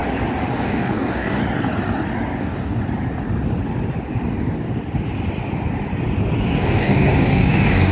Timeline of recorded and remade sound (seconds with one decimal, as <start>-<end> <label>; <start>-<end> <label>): 0.0-0.5 recorded; 0.5-1.4 remade; 1.4-2.4 recorded; 2.4-2.8 remade; 2.8-6.4 recorded; 6.4-7.9 remade